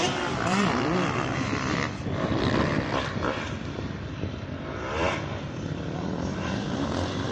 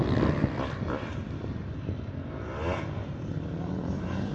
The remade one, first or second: first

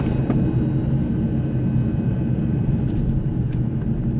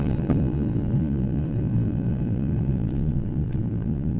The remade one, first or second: second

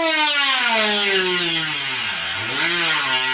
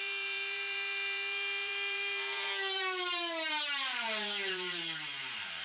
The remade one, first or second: second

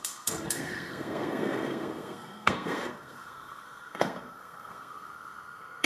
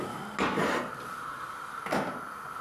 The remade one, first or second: first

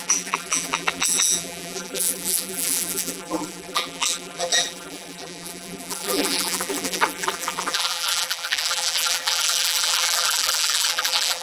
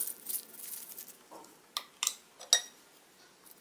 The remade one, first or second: first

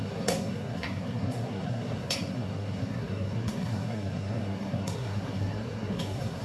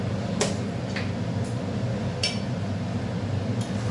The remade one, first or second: first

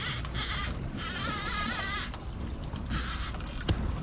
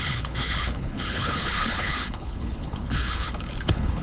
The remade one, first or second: second